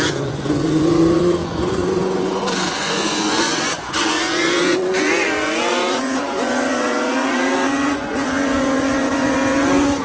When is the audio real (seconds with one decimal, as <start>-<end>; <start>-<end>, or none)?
none